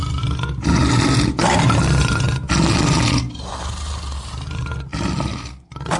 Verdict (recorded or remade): recorded